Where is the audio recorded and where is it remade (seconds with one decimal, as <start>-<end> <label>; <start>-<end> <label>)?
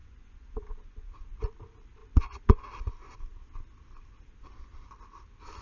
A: 0.0-1.1 remade; 1.1-2.0 recorded; 2.0-2.7 remade; 2.7-5.6 recorded